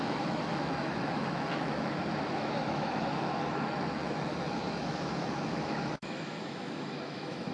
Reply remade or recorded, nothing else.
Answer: remade